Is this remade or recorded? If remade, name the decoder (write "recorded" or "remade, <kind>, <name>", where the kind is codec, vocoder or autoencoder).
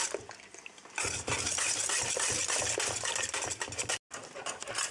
recorded